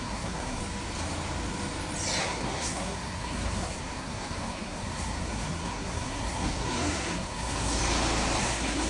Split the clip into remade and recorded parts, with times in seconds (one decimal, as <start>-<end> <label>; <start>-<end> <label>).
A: 0.0-0.6 remade; 0.6-2.2 recorded; 2.2-7.8 remade; 7.8-8.4 recorded; 8.4-8.9 remade